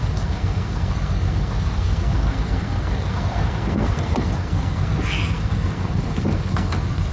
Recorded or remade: remade